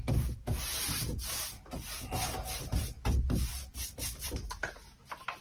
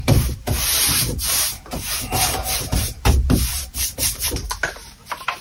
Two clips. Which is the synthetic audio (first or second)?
second